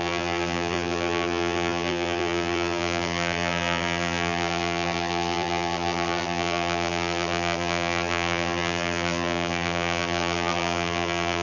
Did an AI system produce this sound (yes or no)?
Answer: yes